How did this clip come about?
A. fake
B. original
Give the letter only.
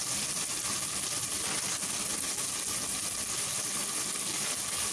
B